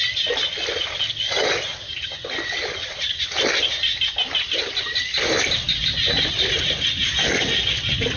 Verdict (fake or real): real